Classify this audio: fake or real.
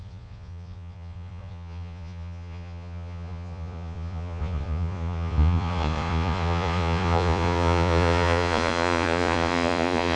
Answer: fake